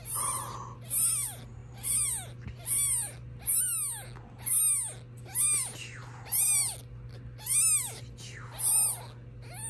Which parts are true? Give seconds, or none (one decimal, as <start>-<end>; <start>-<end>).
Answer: 0.0-9.7